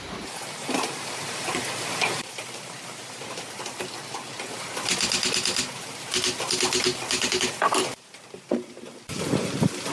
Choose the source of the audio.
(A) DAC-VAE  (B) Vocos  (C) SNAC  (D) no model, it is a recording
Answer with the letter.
D